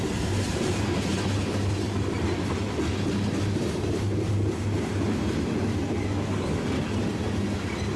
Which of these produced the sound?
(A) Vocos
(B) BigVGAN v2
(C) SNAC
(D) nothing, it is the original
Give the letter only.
D